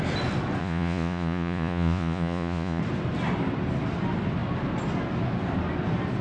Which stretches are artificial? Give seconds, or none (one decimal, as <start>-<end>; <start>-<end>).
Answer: 0.6-2.8